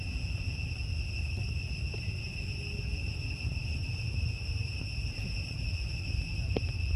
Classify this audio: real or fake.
real